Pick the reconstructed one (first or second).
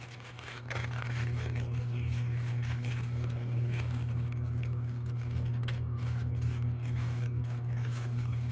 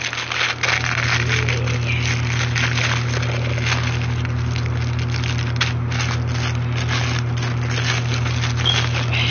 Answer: first